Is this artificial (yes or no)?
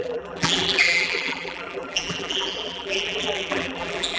yes